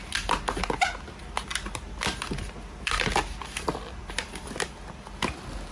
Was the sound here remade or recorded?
recorded